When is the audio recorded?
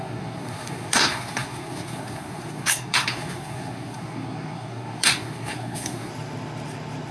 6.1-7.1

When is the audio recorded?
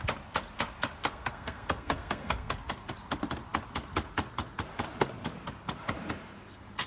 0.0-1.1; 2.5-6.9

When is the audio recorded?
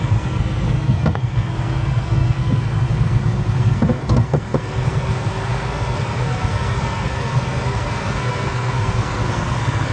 none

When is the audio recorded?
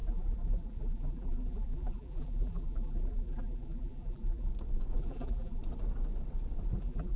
4.5-5.0; 5.6-6.8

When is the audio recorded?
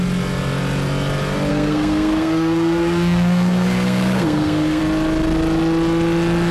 0.0-1.5; 4.8-6.5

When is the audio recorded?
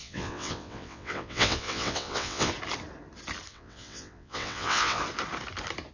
2.5-3.5; 5.0-5.9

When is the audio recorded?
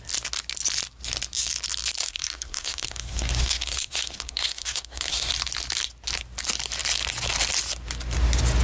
0.0-2.0; 5.3-8.6